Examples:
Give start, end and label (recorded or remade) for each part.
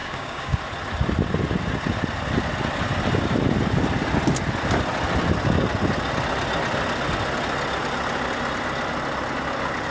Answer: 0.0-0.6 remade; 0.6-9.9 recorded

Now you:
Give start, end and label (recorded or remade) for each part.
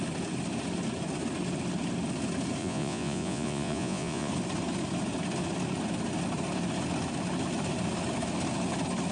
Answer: 0.0-2.6 recorded; 2.6-4.3 remade; 4.3-9.1 recorded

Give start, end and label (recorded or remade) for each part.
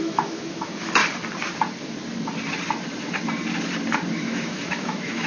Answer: 0.0-1.0 remade; 1.0-4.1 recorded; 4.1-5.3 remade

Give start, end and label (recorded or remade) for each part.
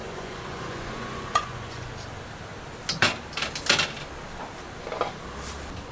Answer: 0.0-1.9 remade; 1.9-5.9 recorded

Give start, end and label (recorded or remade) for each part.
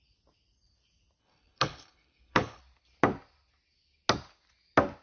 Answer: 0.0-1.2 recorded; 1.2-2.6 remade; 2.6-5.0 recorded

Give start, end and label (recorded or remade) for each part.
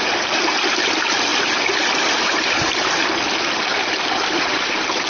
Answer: 0.0-5.1 recorded